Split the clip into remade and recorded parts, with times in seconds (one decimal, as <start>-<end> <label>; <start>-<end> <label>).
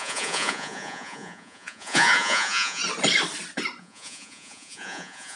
0.0-2.8 remade; 2.8-3.8 recorded; 3.8-5.4 remade